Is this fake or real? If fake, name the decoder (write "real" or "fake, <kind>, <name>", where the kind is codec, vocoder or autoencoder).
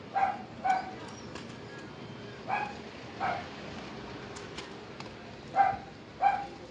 real